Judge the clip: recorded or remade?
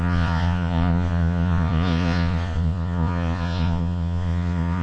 remade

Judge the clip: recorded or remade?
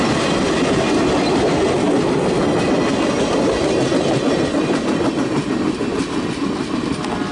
recorded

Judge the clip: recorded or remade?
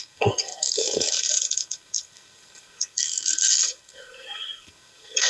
remade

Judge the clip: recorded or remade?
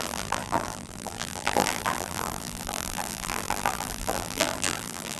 remade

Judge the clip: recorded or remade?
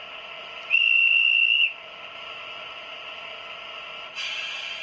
recorded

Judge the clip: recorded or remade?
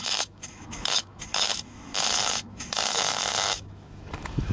remade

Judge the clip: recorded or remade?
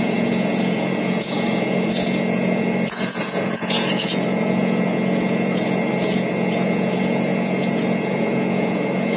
remade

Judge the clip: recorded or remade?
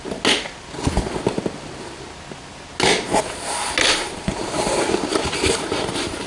recorded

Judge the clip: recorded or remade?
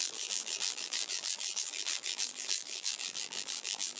remade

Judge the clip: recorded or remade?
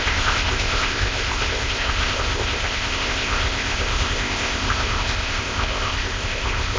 remade